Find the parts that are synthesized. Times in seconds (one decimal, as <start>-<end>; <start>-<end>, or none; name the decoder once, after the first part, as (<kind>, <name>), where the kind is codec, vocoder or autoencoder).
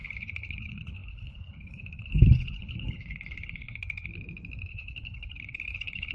0.0-4.1 (codec, HILCodec); 4.7-6.1